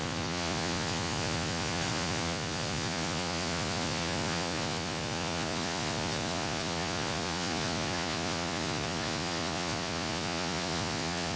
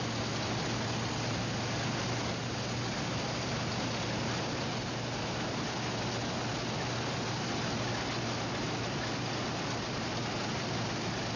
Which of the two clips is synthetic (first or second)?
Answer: first